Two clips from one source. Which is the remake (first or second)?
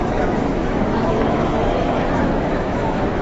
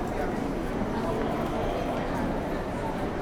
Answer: first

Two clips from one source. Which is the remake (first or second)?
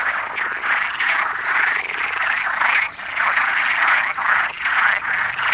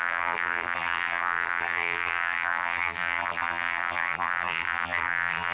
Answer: second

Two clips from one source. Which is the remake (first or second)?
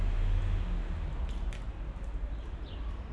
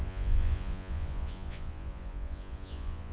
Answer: second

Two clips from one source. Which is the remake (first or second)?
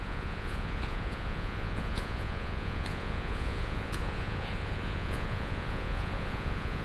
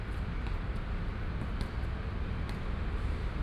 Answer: first